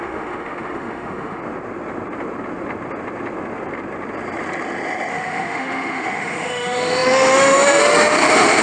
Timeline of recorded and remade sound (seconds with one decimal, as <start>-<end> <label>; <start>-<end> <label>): 0.0-1.4 remade; 1.4-5.1 recorded; 5.1-8.6 remade